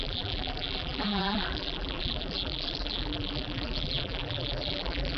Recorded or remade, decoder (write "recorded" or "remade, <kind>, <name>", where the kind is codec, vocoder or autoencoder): remade, vocoder, BigVGAN v2